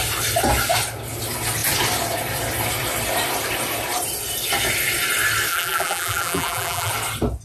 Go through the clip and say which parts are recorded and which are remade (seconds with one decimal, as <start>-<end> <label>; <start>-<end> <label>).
0.0-5.5 recorded; 5.5-6.9 remade; 6.9-7.4 recorded